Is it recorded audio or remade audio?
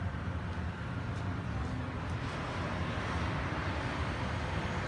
recorded